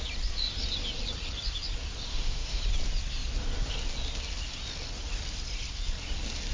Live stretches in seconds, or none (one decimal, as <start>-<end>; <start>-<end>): 0.0-2.1; 2.6-6.5